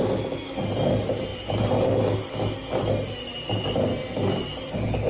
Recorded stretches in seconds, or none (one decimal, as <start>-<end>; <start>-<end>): 0.0-5.1